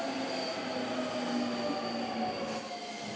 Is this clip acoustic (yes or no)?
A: yes